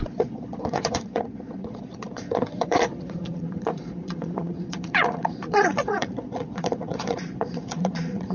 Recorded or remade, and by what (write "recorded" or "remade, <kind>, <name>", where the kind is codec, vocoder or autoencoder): remade, vocoder, Vocos